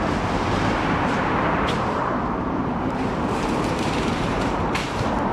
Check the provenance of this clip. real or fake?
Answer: fake